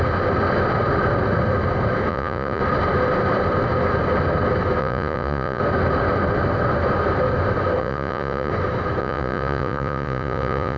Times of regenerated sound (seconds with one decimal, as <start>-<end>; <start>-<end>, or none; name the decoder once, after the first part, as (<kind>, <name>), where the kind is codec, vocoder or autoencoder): 2.1-2.6 (vocoder, Vocos); 4.8-5.6; 7.8-8.5; 9.0-10.8